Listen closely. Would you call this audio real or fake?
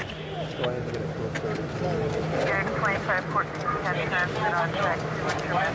real